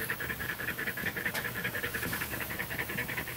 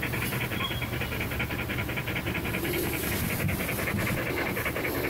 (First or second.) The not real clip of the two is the first